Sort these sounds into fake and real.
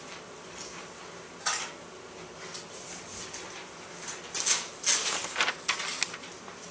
real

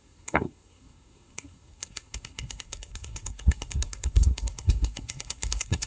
fake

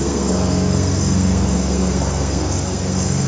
fake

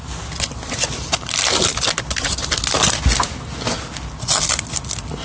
real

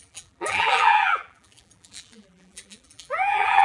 fake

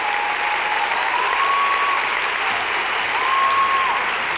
real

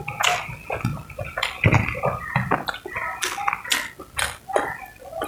real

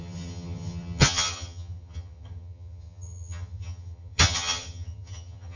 fake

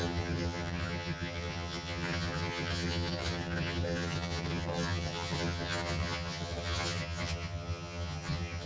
fake